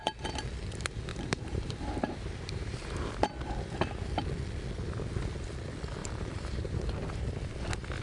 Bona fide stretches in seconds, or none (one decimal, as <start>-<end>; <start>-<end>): 0.0-1.1; 3.1-6.0; 7.2-8.0